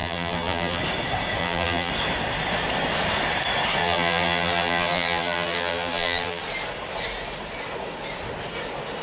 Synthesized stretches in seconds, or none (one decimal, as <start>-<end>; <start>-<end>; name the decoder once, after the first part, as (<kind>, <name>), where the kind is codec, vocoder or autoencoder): 0.0-0.8 (vocoder, BigVGAN v2); 1.4-1.9; 3.8-6.4